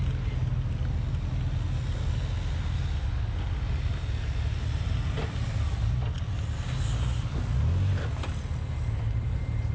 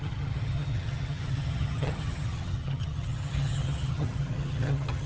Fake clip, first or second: second